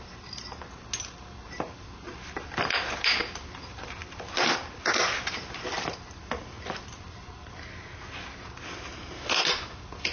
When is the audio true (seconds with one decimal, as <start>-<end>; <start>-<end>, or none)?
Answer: 0.0-10.1